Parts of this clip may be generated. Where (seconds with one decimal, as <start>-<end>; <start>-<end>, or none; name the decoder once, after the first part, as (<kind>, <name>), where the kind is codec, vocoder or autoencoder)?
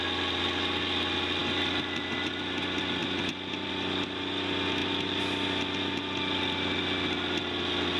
3.0-3.7 (vocoder, BigVGAN v2)